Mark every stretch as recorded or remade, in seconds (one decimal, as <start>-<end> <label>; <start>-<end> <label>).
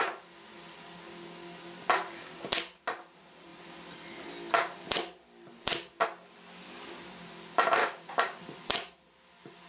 0.0-7.8 recorded; 7.8-8.4 remade; 8.4-9.7 recorded